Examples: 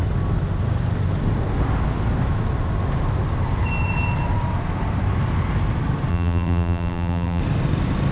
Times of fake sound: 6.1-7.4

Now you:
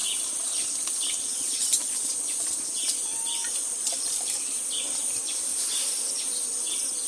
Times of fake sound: 5.5-6.0

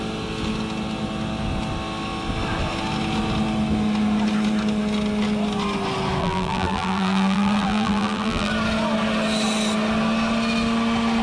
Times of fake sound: 6.2-8.5

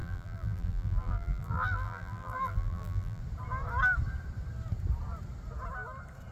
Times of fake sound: 0.0-3.2

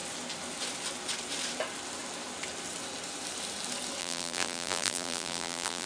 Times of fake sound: 4.0-5.9

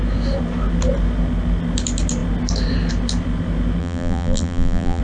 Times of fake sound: 3.8-5.0

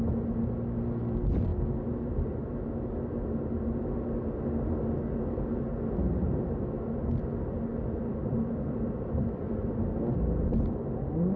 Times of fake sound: 7.7-9.4